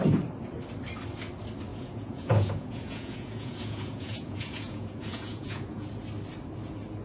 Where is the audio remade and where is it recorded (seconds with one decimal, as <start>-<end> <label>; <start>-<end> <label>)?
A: 0.0-1.7 recorded; 1.7-5.9 remade; 5.9-7.0 recorded